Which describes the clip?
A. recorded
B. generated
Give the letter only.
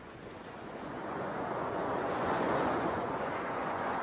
B